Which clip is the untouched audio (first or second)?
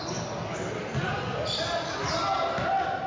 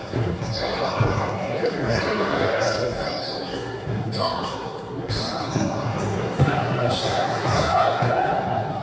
first